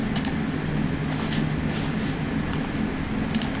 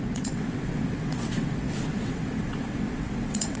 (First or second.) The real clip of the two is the first